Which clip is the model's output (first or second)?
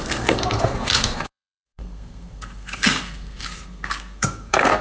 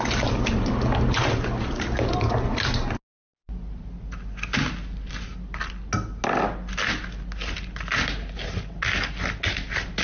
first